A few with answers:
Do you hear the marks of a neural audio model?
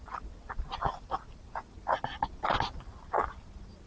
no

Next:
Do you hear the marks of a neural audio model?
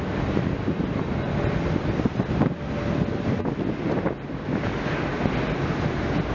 no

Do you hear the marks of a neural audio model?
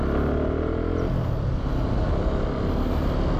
no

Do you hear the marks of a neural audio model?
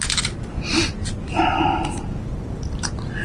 no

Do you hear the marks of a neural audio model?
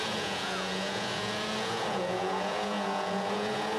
yes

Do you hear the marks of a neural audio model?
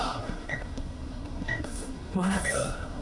yes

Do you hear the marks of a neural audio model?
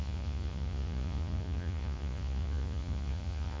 yes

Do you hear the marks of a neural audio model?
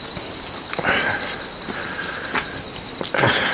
no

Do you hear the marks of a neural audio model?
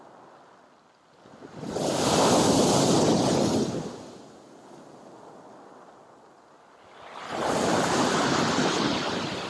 no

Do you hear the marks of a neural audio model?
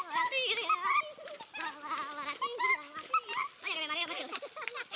no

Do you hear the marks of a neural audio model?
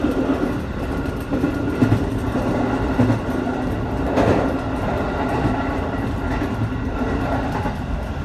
no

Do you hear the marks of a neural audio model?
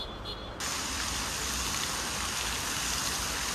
no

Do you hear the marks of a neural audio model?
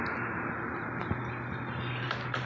no